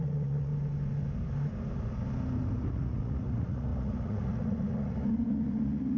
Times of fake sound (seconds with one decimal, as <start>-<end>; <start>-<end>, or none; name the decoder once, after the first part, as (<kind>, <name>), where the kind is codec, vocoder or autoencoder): 0.0-0.5 (vocoder, Vocos); 2.7-6.0